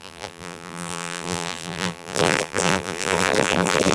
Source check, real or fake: fake